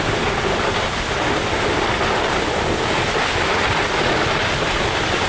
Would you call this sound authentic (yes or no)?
yes